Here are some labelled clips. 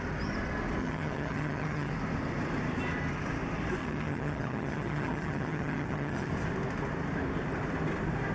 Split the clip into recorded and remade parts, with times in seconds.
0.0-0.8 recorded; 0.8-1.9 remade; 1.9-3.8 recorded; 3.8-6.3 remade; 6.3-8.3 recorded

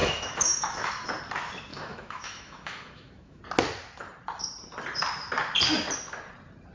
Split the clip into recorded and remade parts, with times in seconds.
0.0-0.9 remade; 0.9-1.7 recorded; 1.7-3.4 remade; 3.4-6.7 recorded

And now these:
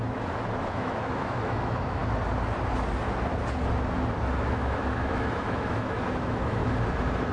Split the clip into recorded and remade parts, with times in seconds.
0.0-2.0 remade; 2.0-4.2 recorded; 4.2-6.6 remade; 6.6-7.3 recorded